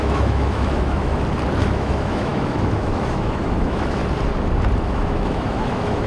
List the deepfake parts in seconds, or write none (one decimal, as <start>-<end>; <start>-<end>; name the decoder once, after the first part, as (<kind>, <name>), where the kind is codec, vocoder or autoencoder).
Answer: 0.0-1.1 (autoencoder, DAC-VAE); 1.6-4.0; 4.8-6.1